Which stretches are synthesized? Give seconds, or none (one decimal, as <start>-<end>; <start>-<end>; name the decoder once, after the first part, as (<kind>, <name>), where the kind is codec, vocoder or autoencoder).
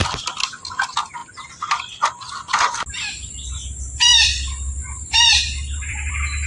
4.1-6.1 (vocoder, BigVGAN v2)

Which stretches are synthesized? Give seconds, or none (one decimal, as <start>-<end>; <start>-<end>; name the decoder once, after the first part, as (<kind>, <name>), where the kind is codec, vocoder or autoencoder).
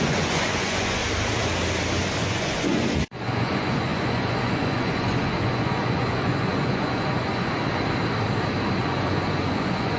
0.0-1.0 (vocoder, Vocos); 2.2-7.6; 8.8-10.0